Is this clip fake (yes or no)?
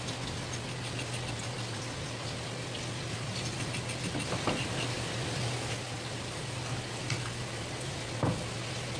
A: no